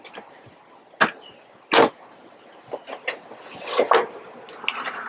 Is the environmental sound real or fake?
real